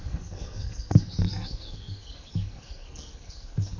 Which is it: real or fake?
fake